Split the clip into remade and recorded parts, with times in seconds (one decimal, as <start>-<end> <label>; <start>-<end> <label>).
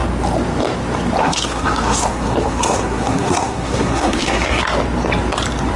0.0-1.2 recorded; 1.2-4.6 remade; 4.6-5.8 recorded